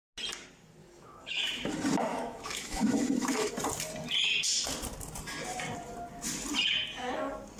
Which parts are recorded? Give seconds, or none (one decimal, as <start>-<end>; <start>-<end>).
0.0-0.8; 1.7-2.1; 3.5-7.6